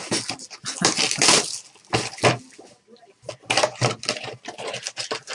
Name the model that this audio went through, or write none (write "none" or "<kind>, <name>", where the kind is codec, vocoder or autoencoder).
none